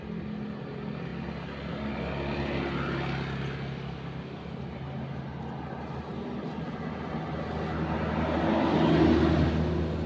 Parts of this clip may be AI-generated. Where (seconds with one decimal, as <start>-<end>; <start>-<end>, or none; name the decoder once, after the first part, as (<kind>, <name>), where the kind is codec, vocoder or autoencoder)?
none